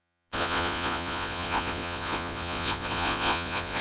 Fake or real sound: fake